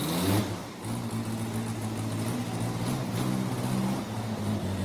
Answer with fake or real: real